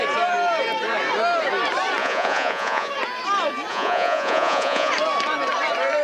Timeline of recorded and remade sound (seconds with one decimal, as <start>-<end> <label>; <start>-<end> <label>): 0.0-2.0 recorded; 2.0-2.9 remade; 2.9-3.7 recorded; 3.7-4.9 remade; 4.9-6.0 recorded